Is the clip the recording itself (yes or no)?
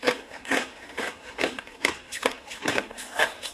no